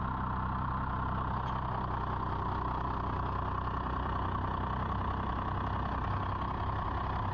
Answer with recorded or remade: recorded